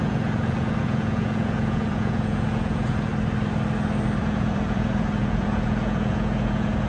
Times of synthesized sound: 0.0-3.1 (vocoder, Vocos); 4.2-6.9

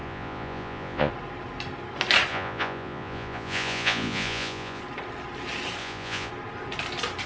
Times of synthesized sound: 0.0-1.1 (vocoder, Vocos); 2.3-4.8; 5.8-6.3